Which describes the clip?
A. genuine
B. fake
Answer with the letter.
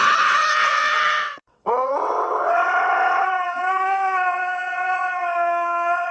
B